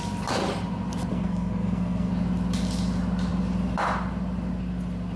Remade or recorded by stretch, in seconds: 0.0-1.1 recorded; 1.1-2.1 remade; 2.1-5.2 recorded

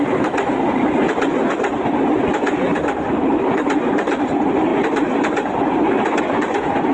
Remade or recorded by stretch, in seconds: 0.0-6.9 recorded

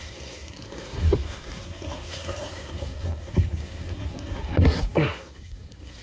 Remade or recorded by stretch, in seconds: 0.0-6.0 remade

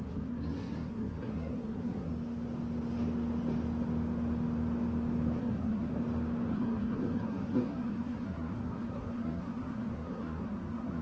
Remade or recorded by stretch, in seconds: 0.0-2.1 remade; 2.1-5.4 recorded; 5.4-5.9 remade; 5.9-6.5 recorded; 6.5-11.0 remade

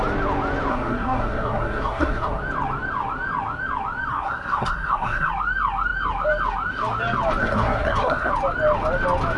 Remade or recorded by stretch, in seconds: 0.0-0.7 recorded; 0.7-2.4 remade; 2.4-4.1 recorded; 4.1-5.3 remade; 5.3-7.4 recorded; 7.4-8.3 remade; 8.3-9.4 recorded

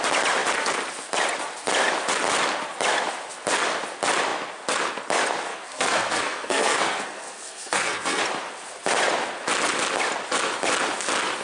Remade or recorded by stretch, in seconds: 0.0-5.5 recorded; 5.5-8.2 remade; 8.2-11.4 recorded

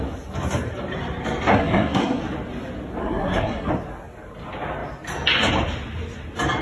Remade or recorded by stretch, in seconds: 0.0-1.5 recorded; 1.5-2.2 remade; 2.2-3.0 recorded; 3.0-3.7 remade; 3.7-6.6 recorded

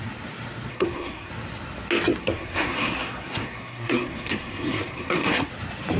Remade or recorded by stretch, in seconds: 0.0-0.7 recorded; 0.7-1.3 remade; 1.3-2.2 recorded; 2.2-5.5 remade; 5.5-6.0 recorded